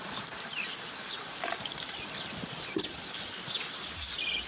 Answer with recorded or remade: recorded